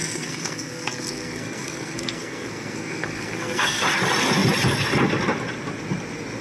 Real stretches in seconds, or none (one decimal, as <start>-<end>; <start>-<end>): 3.8-6.4